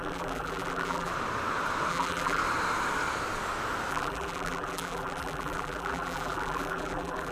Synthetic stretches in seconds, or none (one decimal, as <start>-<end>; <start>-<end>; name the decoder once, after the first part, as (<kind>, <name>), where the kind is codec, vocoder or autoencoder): 0.0-1.1 (vocoder, BigVGAN v2); 1.9-2.4; 3.9-7.3